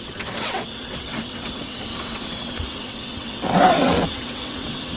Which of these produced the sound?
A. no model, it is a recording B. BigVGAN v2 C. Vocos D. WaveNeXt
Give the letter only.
D